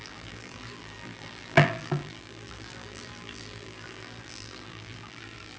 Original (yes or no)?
no